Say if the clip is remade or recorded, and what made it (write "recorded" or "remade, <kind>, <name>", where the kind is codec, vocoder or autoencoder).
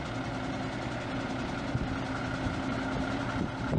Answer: recorded